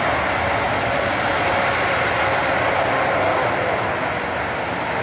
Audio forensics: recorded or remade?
recorded